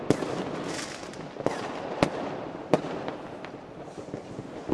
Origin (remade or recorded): recorded